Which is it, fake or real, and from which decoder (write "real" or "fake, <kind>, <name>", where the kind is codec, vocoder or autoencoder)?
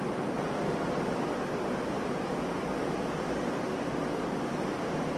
real